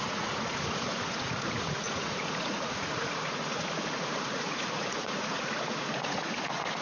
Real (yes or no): no